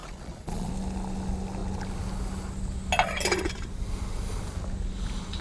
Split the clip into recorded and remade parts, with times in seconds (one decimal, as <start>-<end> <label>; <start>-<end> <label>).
0.0-0.7 remade; 0.7-5.4 recorded

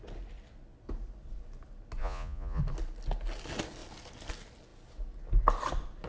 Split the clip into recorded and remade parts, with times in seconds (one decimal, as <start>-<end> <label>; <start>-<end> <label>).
0.0-2.0 recorded; 2.0-2.6 remade; 2.6-6.1 recorded